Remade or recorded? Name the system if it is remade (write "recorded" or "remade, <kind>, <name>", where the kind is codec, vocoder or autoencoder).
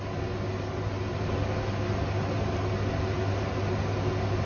recorded